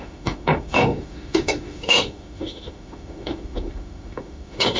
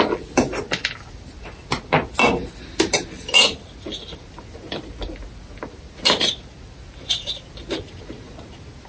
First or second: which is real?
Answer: second